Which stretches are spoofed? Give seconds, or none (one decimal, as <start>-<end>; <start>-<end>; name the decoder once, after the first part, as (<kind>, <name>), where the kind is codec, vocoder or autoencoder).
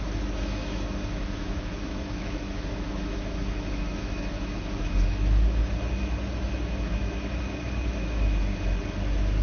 0.0-5.6 (autoencoder, DAC-VAE); 6.4-8.5